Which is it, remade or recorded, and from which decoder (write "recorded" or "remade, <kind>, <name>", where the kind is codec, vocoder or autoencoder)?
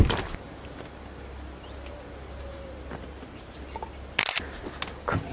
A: recorded